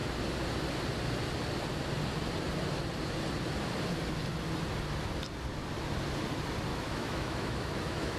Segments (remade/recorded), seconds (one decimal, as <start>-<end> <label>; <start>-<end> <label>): 0.0-6.7 recorded; 6.7-8.2 remade